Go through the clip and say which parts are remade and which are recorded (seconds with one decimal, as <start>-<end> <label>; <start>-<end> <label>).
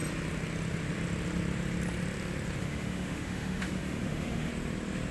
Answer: 0.0-2.6 recorded; 2.6-4.5 remade; 4.5-5.1 recorded